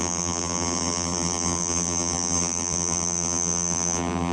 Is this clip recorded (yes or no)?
no